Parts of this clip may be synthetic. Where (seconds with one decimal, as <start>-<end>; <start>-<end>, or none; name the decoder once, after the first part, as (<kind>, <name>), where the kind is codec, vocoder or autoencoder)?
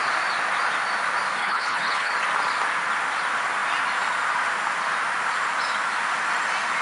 1.4-2.1 (codec, HILCodec)